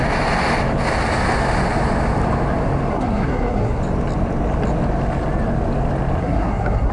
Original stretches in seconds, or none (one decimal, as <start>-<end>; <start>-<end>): 0.0-2.9; 3.8-6.2